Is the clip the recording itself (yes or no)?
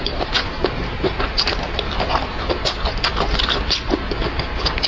yes